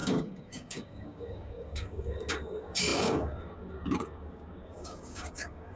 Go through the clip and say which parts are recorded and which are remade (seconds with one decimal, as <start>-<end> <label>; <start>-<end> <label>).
0.0-5.8 remade